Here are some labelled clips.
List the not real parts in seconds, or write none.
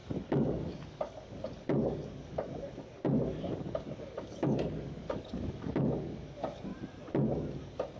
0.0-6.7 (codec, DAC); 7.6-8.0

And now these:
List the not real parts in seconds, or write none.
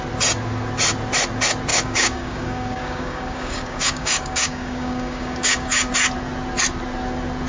1.7-5.9 (codec, DAC)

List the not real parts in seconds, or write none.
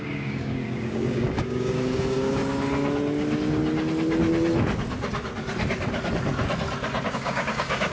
0.0-2.4 (codec, DAC); 7.1-7.9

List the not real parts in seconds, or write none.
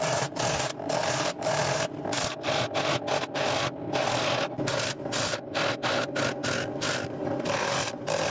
none